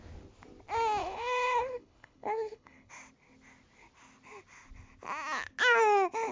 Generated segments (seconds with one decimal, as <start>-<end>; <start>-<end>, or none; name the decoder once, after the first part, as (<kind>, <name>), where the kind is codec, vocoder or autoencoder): 1.0-2.9 (codec, HILCodec)